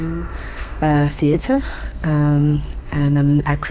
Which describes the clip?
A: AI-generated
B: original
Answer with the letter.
A